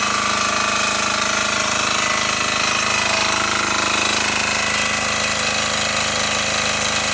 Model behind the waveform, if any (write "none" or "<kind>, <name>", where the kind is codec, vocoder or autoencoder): none